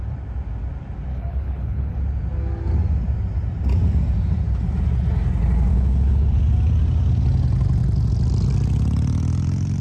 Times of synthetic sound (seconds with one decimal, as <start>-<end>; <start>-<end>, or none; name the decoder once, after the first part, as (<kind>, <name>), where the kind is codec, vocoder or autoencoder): 1.1-2.0 (codec, HILCodec); 5.7-6.4